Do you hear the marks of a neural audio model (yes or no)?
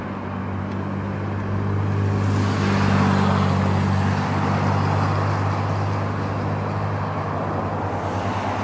no